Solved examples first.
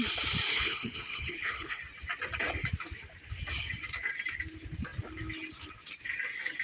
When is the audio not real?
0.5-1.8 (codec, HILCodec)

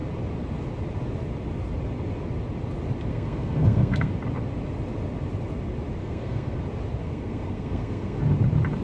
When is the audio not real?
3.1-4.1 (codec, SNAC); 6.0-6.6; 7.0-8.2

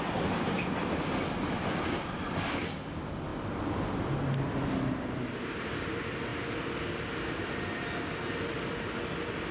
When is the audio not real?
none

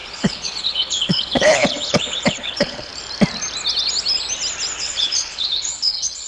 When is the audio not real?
0.0-2.9 (codec, HILCodec); 4.8-6.3

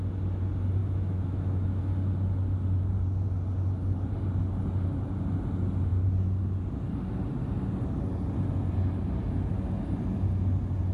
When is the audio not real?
0.8-1.8 (autoencoder, DAC-VAE)